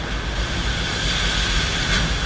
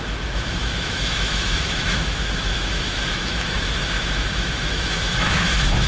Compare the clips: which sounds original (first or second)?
first